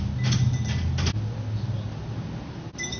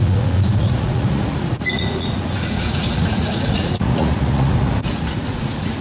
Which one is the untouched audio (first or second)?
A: first